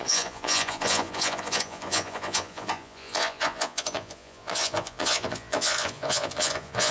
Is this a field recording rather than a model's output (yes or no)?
no